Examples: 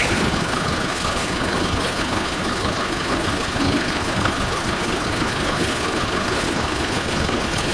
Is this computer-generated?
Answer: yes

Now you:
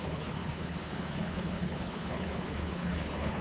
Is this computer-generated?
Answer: yes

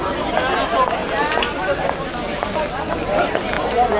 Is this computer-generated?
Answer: no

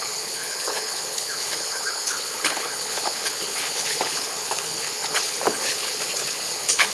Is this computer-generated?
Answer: yes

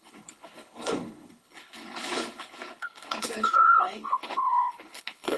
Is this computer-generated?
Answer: yes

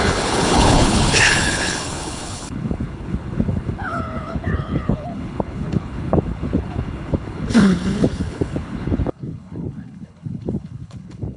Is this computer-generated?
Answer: yes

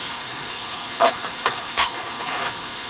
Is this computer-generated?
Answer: yes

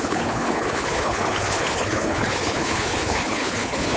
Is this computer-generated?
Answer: yes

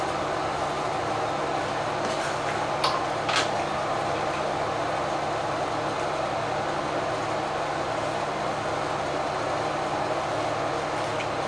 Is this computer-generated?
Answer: no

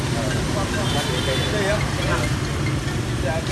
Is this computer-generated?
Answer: no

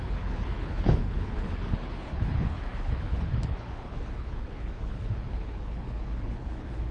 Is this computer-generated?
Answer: yes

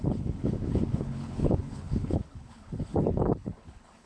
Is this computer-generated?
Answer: yes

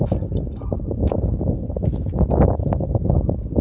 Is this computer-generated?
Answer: no